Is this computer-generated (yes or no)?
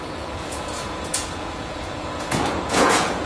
yes